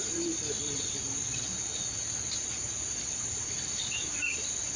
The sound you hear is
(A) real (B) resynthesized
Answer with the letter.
A